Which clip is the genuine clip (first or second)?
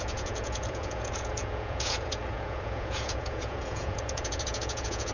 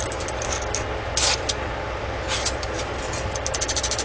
second